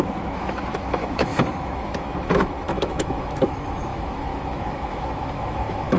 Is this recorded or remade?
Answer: remade